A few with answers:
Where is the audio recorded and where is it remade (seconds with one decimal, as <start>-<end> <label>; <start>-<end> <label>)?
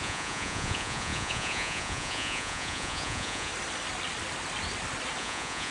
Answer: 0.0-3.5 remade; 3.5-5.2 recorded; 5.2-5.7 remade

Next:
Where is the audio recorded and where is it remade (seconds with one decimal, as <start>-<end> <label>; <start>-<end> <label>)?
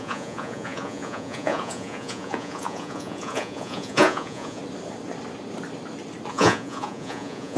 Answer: 0.0-4.6 remade; 4.6-6.3 recorded; 6.3-7.6 remade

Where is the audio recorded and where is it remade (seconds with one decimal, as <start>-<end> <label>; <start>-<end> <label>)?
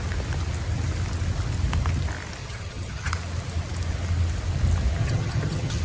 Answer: 0.0-2.4 recorded; 2.4-3.1 remade; 3.1-5.0 recorded; 5.0-5.8 remade